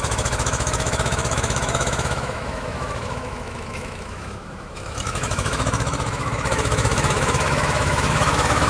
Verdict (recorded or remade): remade